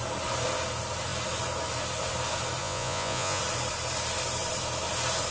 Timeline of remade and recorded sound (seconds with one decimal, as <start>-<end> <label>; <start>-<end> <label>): 0.0-2.6 recorded; 2.6-3.4 remade; 3.4-5.3 recorded